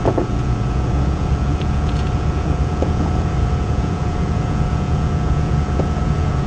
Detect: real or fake fake